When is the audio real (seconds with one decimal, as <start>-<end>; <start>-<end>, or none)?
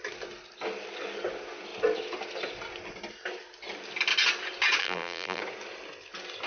0.0-4.8; 5.4-6.5